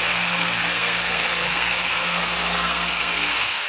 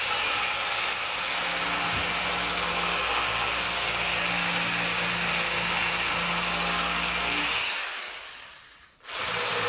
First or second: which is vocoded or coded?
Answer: first